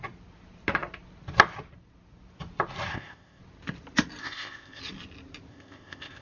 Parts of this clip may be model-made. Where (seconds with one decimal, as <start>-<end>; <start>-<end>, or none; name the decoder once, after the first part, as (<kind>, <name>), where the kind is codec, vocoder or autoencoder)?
2.9-3.4 (codec, ZipCodec); 4.2-4.8; 5.5-6.2